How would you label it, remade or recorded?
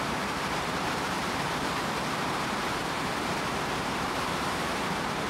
remade